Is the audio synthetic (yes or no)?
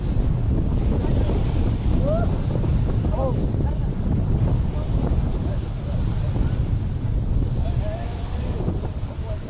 no